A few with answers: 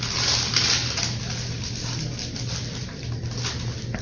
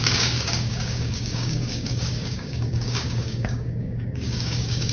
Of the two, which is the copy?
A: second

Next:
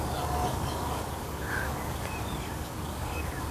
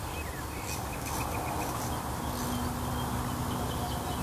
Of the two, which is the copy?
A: first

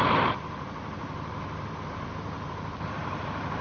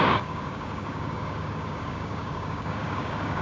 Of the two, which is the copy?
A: second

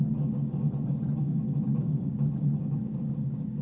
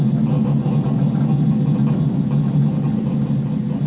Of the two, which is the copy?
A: first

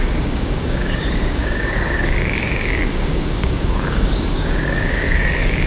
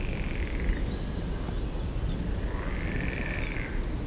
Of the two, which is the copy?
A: first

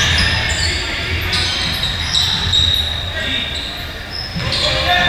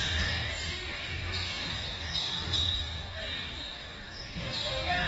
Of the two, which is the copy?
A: second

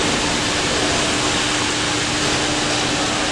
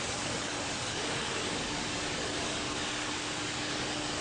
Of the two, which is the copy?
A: second